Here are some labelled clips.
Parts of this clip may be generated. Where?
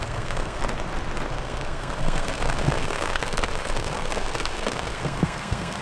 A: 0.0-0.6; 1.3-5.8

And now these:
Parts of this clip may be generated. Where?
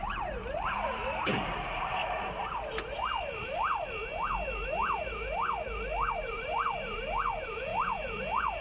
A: 0.0-2.0; 6.1-8.6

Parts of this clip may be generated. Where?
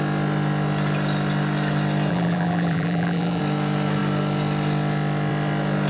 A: 2.1-3.4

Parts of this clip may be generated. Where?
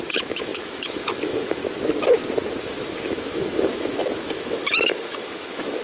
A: 0.0-1.6; 2.6-5.8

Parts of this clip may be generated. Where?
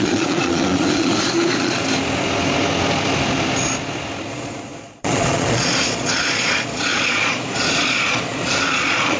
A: 0.0-1.8; 4.3-9.2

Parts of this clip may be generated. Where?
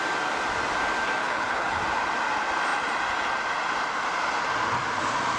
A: 1.2-1.8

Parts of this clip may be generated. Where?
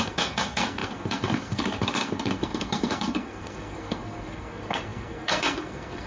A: 0.0-6.1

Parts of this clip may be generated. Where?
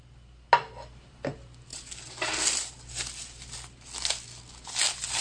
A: none